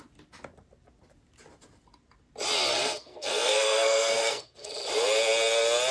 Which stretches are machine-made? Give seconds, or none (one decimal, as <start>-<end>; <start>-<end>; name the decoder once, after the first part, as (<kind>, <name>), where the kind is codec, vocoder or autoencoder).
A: 2.7-4.7 (codec, SNAC)

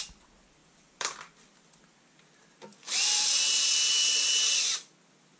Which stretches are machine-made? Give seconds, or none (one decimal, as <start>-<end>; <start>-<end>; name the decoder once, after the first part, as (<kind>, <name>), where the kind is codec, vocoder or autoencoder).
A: 0.6-1.2 (vocoder, BigVGAN v2); 2.7-3.9

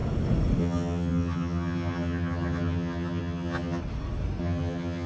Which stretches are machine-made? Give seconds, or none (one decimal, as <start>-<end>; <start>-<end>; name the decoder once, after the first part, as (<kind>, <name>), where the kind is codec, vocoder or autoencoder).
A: 0.6-3.8 (vocoder, HiFi-GAN); 4.4-5.1

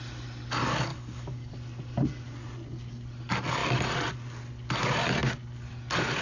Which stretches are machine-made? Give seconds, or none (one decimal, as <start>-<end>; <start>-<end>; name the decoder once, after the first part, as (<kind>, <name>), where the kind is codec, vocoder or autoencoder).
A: 0.9-1.5 (codec, DAC)

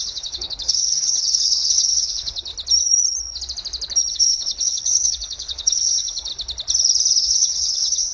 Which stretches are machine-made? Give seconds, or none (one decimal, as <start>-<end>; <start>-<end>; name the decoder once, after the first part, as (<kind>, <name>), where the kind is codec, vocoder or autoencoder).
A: 0.0-2.5 (codec, HILCodec); 4.1-6.3; 7.2-8.1

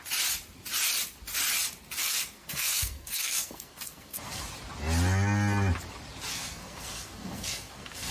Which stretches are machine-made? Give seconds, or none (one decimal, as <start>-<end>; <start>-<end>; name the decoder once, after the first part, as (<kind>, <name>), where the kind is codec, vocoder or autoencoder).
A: 2.0-4.4 (codec, SNAC); 6.3-8.1